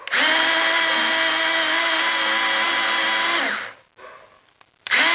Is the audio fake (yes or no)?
no